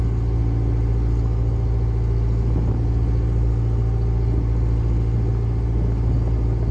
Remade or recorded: recorded